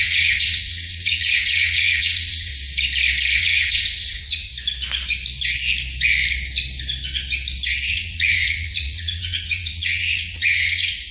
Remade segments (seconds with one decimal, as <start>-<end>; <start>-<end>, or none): 0.0-2.5; 3.4-4.5; 7.9-11.1